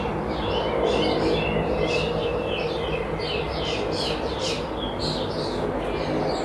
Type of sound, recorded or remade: recorded